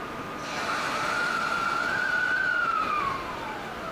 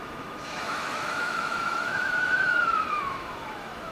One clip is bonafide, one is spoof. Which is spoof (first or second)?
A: second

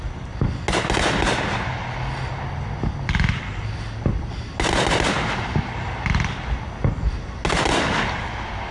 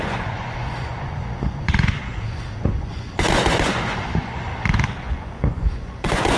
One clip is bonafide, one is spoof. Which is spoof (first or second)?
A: second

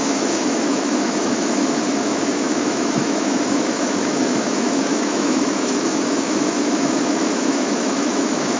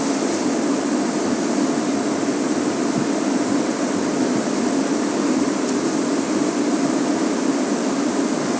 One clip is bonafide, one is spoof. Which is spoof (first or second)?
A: first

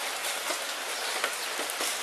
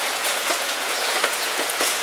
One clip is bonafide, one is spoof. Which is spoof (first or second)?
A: second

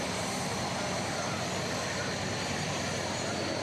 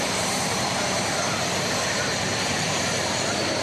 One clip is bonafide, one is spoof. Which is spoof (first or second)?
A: second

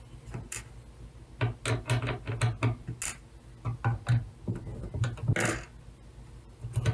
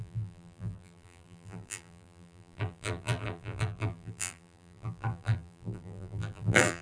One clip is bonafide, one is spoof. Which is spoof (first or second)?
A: second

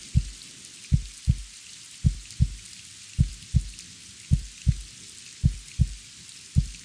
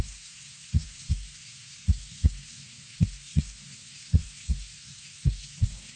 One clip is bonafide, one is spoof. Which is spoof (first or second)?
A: second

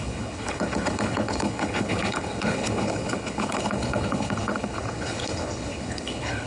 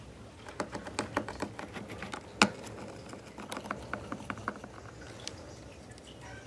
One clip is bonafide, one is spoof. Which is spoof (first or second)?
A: first